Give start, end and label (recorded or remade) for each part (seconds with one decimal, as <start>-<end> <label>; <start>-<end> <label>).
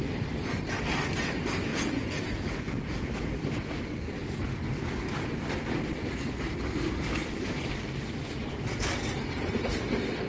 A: 0.0-1.7 recorded; 1.7-3.1 remade; 3.1-10.3 recorded